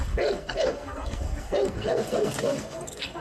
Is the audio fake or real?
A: fake